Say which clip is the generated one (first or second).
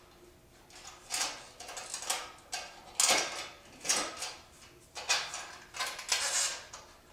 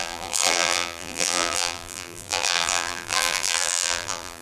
second